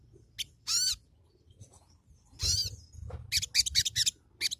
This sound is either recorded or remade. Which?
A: recorded